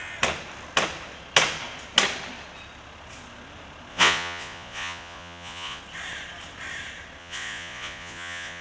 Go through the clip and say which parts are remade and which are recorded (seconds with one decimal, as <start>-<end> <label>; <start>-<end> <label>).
0.0-3.9 recorded; 3.9-5.8 remade; 5.8-7.2 recorded; 7.2-8.6 remade